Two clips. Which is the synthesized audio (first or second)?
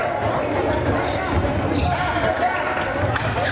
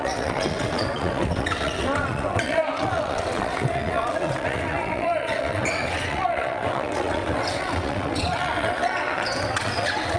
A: second